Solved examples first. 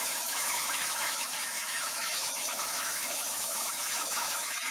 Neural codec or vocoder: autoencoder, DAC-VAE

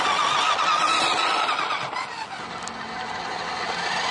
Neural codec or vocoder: none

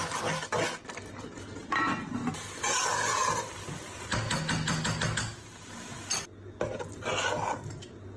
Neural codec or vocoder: none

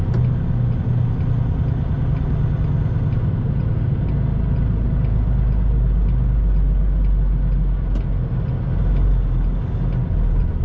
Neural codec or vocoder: none